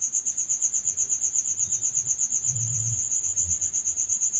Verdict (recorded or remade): remade